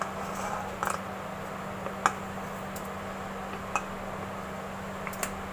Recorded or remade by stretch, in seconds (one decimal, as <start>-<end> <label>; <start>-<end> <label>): 0.0-5.5 recorded